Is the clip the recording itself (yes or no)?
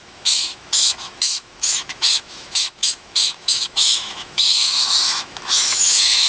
no